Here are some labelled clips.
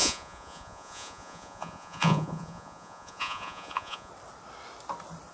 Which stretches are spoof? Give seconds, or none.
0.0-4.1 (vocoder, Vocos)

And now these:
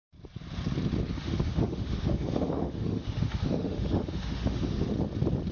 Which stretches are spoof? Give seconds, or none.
1.1-4.9 (autoencoder, DAC-VAE)

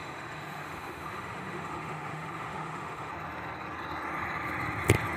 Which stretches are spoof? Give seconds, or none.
0.0-3.1 (autoencoder, DAC-VAE)

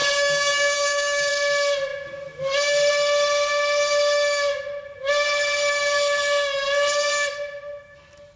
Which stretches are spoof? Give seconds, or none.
0.0-1.3 (codec, DAC)